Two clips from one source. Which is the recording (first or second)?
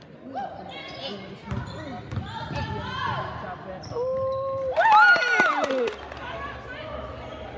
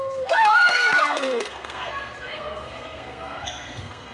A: first